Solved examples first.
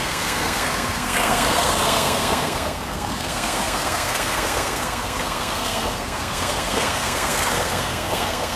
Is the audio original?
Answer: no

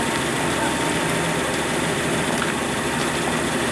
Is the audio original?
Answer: yes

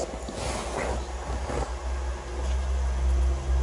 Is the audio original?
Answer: yes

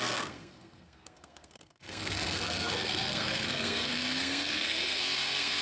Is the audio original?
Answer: no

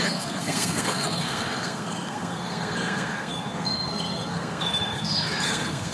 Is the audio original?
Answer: no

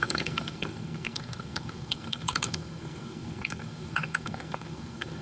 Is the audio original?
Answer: no